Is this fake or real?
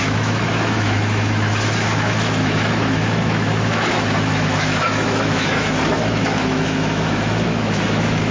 fake